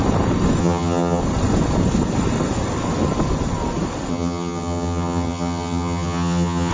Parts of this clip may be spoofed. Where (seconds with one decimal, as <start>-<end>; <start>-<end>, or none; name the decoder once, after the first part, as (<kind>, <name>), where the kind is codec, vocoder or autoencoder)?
0.6-1.2 (vocoder, HiFi-GAN); 4.1-6.7